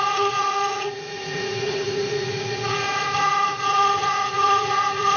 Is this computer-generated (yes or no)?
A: yes